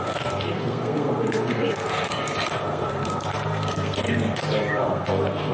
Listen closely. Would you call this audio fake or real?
fake